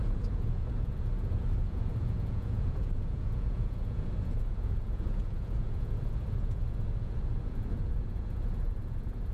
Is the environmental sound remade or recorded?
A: remade